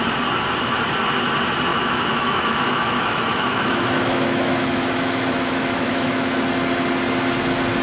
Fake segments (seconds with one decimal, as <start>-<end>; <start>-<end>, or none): 1.7-6.4